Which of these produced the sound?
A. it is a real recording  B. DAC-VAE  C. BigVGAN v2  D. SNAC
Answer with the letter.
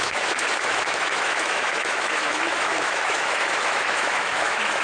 B